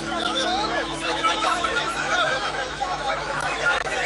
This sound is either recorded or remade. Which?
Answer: remade